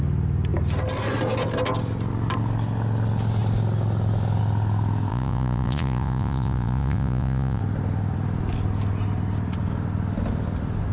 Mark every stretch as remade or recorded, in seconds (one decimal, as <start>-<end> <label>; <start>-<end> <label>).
0.0-5.1 recorded; 5.1-7.6 remade; 7.6-10.9 recorded